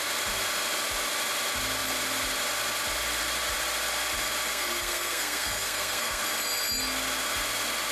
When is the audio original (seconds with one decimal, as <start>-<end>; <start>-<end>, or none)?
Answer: 0.0-4.5; 6.2-7.9